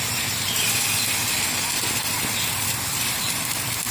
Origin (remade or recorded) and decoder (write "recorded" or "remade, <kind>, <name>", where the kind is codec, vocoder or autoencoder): remade, vocoder, BigVGAN v2